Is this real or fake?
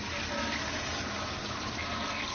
real